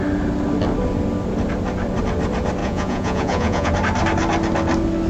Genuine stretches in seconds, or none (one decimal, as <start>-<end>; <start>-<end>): 0.0-2.6; 3.7-5.1